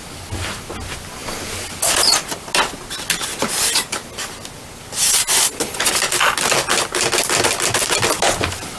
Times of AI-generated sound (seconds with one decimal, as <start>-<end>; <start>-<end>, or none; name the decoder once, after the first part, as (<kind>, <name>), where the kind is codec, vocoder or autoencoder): none